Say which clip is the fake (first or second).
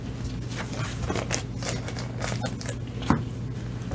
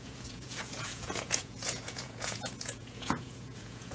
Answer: second